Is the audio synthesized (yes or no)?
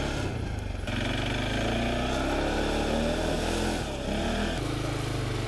no